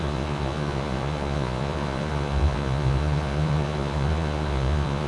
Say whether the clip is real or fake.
fake